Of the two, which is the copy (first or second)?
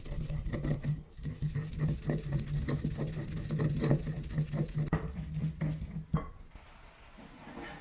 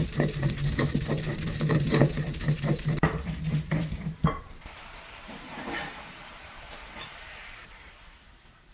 second